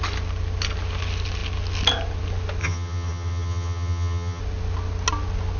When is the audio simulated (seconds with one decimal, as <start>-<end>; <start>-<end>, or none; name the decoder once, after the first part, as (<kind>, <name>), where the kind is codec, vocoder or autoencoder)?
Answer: 2.6-4.4 (vocoder, HiFi-GAN)